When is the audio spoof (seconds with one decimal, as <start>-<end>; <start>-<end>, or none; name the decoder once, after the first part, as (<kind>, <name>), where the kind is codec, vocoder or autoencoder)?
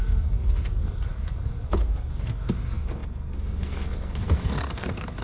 0.0-5.2 (codec, SNAC)